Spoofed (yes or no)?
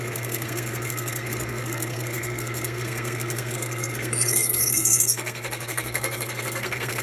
yes